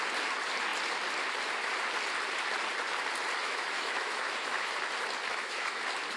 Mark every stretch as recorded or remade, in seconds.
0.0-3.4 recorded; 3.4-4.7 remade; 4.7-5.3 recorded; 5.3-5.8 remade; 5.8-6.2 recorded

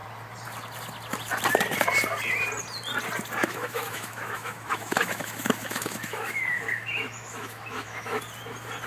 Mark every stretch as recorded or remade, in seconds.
0.0-3.4 recorded; 3.4-8.2 remade; 8.2-8.9 recorded